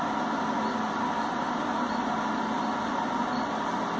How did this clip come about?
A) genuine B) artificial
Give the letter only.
A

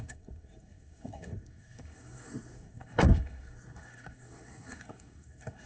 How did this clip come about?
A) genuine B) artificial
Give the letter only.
B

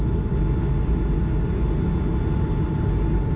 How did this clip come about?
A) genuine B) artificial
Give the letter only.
A